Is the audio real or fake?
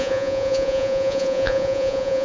fake